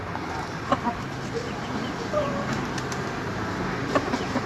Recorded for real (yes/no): no